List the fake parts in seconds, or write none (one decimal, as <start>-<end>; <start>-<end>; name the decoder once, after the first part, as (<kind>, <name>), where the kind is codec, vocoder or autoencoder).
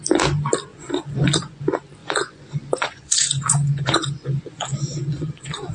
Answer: 0.7-1.6 (vocoder, Vocos); 2.0-5.7